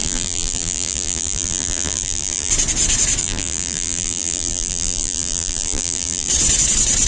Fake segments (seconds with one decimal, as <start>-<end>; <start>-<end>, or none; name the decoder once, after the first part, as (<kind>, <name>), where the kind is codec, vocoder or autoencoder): 0.0-2.5 (vocoder, BigVGAN v2); 3.2-6.3